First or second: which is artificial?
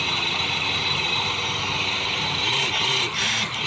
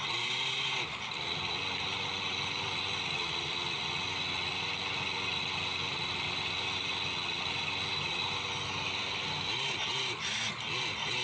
first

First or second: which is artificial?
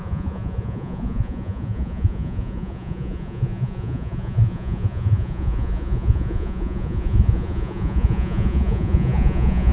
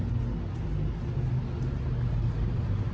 first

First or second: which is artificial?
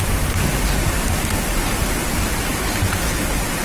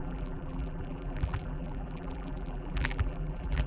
second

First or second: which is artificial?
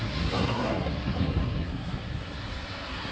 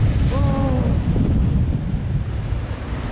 first